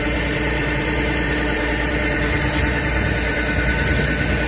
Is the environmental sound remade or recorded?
remade